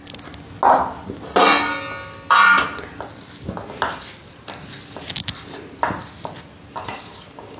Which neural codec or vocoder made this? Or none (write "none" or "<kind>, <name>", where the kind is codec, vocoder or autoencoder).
none